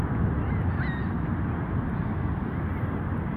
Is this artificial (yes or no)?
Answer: no